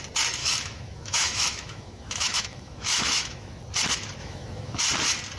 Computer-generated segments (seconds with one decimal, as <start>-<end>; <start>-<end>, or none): 0.4-3.6; 4.2-4.8